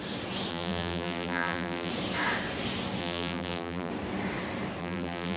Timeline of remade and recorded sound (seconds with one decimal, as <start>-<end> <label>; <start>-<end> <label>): 0.0-0.5 recorded; 0.5-1.9 remade; 1.9-3.0 recorded; 3.0-3.9 remade; 3.9-4.8 recorded; 4.8-5.4 remade